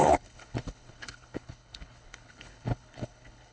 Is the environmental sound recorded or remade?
remade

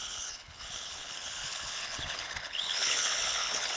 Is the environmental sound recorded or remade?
remade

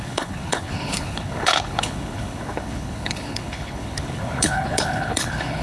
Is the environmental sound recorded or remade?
remade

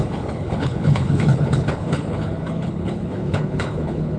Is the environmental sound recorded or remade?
remade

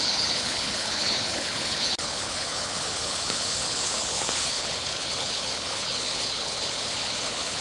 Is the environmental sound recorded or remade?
remade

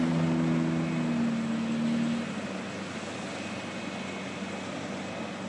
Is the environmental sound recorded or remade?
recorded